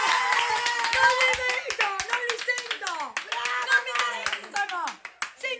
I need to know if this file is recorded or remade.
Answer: recorded